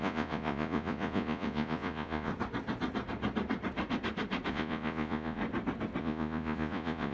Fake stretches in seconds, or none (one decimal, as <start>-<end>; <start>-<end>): 0.0-2.3; 4.5-5.4; 6.0-7.1